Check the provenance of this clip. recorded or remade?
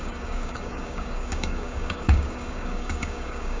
remade